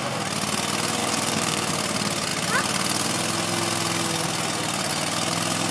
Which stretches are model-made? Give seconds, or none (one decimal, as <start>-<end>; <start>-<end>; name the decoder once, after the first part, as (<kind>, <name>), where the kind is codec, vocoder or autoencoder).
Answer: 1.0-1.7 (codec, DAC)